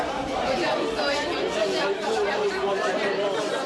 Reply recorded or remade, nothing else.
recorded